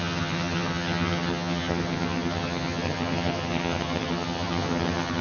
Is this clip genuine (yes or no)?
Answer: no